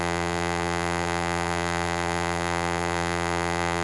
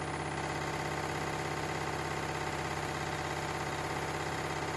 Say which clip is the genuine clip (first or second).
second